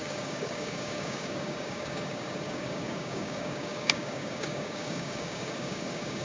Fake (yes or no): yes